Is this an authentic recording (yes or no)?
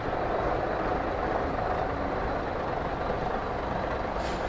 yes